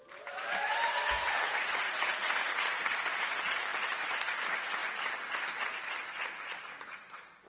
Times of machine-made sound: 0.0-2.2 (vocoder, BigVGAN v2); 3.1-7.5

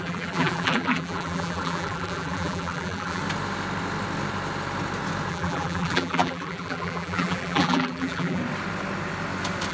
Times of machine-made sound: 0.0-3.2 (vocoder, BigVGAN v2); 5.3-8.4